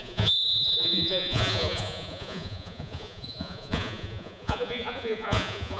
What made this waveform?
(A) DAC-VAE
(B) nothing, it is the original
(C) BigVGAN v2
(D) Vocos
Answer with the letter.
D